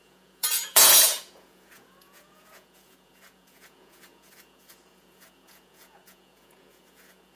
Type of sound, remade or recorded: remade